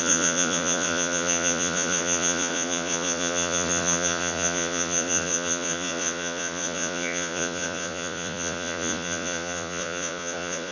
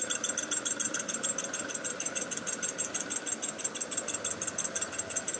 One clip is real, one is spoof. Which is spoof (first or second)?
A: first